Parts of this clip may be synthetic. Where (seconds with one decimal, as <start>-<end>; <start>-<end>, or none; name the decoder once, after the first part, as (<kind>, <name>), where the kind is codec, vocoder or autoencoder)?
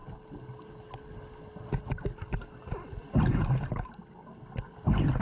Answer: none